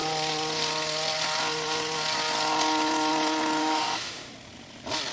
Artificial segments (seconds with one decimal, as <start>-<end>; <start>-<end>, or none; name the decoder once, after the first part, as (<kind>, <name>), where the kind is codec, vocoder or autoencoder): 3.6-4.3 (autoencoder, DAC-VAE)

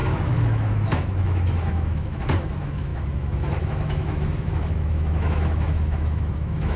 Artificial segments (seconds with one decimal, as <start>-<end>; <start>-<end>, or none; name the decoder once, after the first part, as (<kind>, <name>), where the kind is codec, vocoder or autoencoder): 0.0-6.8 (autoencoder, DAC-VAE)

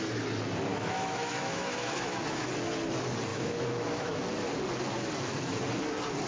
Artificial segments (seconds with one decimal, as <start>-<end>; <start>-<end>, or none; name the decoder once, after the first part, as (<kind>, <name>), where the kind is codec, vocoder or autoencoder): 0.7-2.5 (autoencoder, DAC-VAE); 3.3-4.2

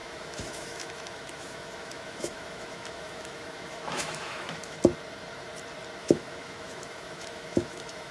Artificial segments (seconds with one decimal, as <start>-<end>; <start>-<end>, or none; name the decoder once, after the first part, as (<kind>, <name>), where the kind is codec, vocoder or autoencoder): 0.0-4.8 (autoencoder, DAC-VAE); 6.0-8.1